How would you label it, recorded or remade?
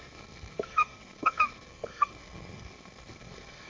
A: remade